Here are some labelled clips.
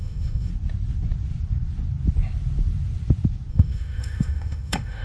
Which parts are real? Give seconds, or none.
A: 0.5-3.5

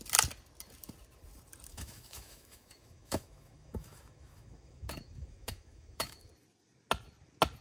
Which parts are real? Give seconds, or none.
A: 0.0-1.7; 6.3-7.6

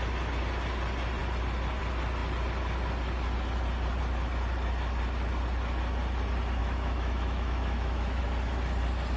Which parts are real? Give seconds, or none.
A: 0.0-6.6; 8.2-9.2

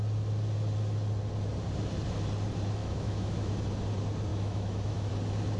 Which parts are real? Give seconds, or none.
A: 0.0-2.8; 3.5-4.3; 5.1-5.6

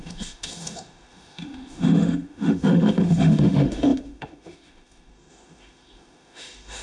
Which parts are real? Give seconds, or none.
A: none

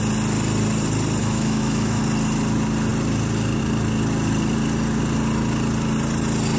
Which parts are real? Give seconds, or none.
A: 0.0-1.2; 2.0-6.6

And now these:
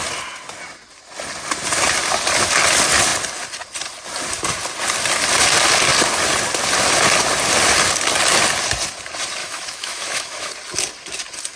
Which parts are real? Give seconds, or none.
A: 0.0-9.4; 10.5-11.6